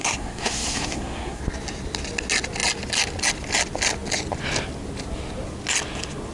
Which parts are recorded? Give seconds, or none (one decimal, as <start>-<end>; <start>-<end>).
1.4-6.3